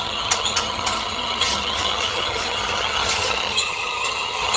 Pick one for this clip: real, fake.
fake